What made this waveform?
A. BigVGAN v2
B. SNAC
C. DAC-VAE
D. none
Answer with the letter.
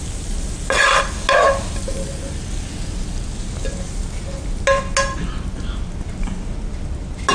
D